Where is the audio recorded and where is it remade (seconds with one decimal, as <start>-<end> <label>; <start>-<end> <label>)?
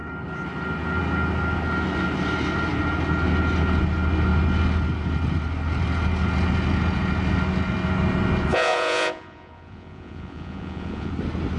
0.0-8.5 recorded; 8.5-11.1 remade; 11.1-11.6 recorded